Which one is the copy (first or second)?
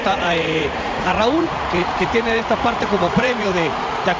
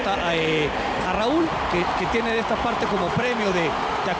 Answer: first